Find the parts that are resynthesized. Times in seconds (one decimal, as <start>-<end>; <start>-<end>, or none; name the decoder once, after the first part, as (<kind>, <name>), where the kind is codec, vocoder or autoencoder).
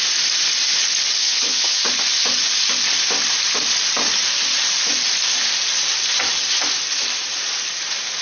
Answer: 1.2-1.8 (vocoder, HiFi-GAN)